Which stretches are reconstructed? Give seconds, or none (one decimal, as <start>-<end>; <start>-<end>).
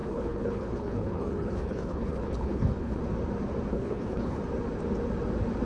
0.0-3.0; 3.7-4.4